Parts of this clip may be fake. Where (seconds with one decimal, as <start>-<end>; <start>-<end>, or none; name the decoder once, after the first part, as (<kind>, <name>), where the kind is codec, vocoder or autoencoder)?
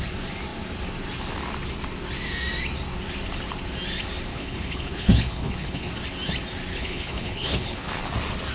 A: 4.3-5.9 (codec, HILCodec); 6.7-8.0